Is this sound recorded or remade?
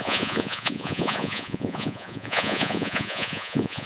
remade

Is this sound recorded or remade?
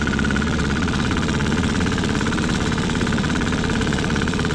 remade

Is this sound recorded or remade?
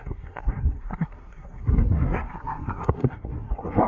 remade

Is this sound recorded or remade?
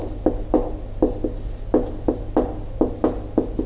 recorded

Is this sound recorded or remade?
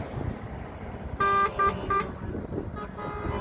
recorded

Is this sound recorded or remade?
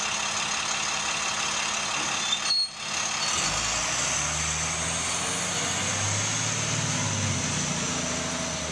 recorded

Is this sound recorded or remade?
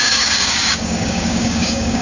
remade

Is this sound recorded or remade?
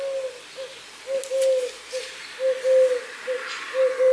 recorded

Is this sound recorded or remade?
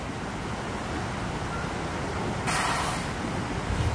recorded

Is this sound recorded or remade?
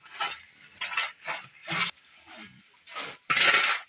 recorded